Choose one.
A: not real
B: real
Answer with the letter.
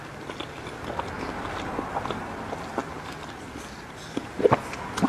B